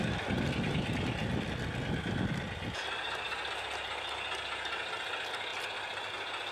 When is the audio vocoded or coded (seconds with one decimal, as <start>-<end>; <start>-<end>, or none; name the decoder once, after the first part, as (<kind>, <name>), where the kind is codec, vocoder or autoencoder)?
none